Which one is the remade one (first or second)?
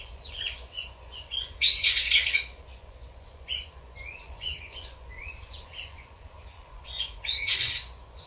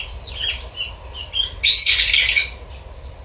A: first